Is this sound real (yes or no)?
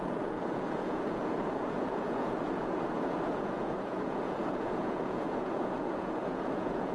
no